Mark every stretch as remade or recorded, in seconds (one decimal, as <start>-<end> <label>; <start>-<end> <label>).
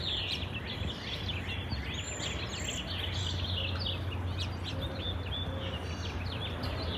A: 0.0-1.3 remade; 1.3-4.9 recorded; 4.9-7.0 remade